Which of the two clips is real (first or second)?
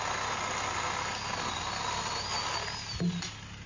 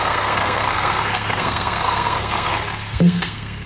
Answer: first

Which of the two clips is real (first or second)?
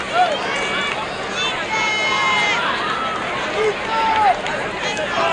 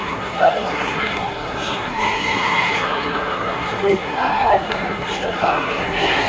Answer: first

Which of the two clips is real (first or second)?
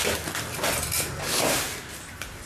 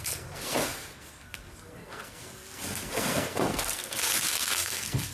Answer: first